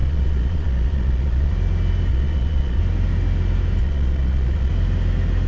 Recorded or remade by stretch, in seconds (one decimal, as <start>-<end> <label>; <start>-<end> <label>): 0.0-1.5 remade; 1.5-2.1 recorded; 2.1-2.8 remade; 2.8-3.8 recorded; 3.8-4.7 remade; 4.7-5.5 recorded

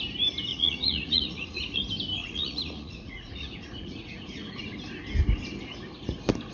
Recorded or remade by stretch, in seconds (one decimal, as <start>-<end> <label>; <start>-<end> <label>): 0.0-0.5 recorded; 0.5-1.8 remade; 1.8-2.2 recorded; 2.2-4.7 remade; 4.7-6.5 recorded

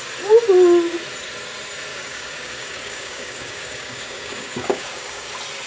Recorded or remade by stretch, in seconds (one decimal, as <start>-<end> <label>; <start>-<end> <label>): 0.0-1.9 recorded; 1.9-5.3 remade; 5.3-5.7 recorded

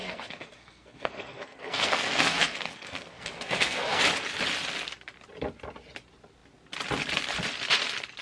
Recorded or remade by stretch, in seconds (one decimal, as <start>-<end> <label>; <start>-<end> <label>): 0.0-4.0 remade; 4.0-8.2 recorded

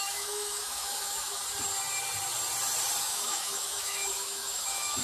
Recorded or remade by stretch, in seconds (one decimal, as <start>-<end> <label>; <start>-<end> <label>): 0.0-1.4 remade; 1.4-3.0 recorded; 3.0-5.0 remade

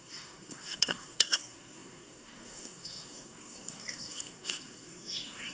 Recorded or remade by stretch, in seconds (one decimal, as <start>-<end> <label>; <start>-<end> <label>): 0.0-5.5 remade

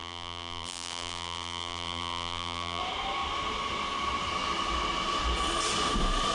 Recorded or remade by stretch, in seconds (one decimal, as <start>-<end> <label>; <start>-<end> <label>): 0.0-2.8 remade; 2.8-6.3 recorded